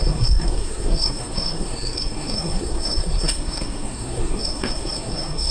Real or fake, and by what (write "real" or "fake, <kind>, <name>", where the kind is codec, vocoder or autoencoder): fake, codec, SNAC